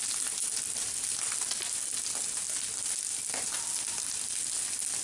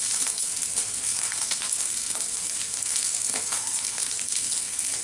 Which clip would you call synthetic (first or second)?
second